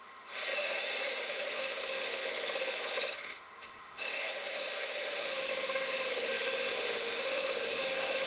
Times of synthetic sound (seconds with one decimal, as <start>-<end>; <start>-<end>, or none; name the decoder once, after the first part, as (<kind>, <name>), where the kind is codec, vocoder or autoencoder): 0.0-8.3 (autoencoder, DAC-VAE)